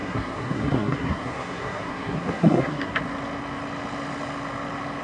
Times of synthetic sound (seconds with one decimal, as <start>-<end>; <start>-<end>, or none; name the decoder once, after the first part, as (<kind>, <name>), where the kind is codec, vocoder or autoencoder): 0.0-3.0 (codec, SNAC)